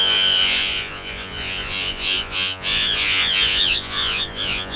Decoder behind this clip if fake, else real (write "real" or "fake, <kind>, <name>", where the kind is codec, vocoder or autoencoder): fake, vocoder, Vocos